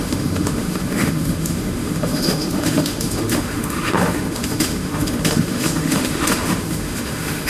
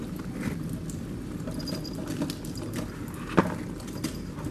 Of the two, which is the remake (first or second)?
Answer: first